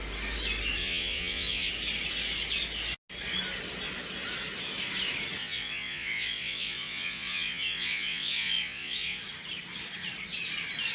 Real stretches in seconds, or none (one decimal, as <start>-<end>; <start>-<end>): 0.0-0.8; 1.7-5.4; 9.2-10.9